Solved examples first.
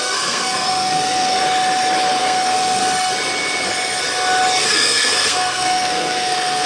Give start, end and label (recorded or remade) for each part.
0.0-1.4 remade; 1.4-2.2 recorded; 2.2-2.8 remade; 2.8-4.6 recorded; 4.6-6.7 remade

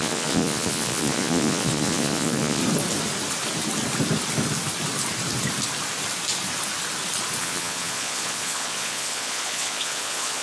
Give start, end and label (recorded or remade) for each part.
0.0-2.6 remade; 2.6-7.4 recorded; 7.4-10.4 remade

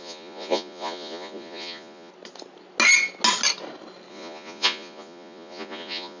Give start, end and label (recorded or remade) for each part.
0.0-2.1 remade; 2.1-4.1 recorded; 4.1-6.2 remade

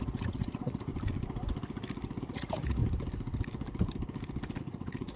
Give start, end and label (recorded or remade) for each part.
0.0-0.9 remade; 0.9-2.2 recorded; 2.2-2.8 remade; 2.8-4.6 recorded; 4.6-5.2 remade

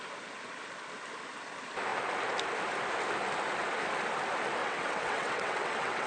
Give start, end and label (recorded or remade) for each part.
0.0-4.6 recorded; 4.6-6.1 remade

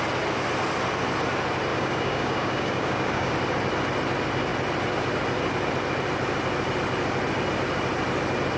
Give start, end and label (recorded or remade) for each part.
0.0-1.7 recorded; 1.7-3.3 remade; 3.3-8.6 recorded

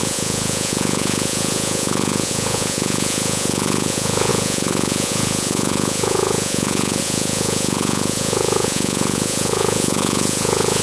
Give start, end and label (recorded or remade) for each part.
0.0-10.8 remade